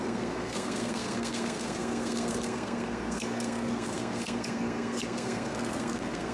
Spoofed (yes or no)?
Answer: yes